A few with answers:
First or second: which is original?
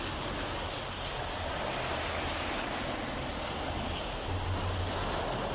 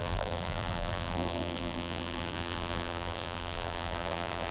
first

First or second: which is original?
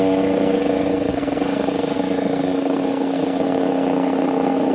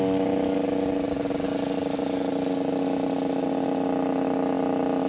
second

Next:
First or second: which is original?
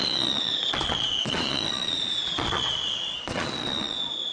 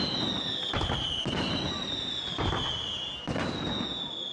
second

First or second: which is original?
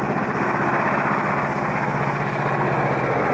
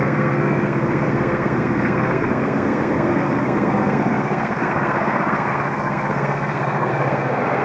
first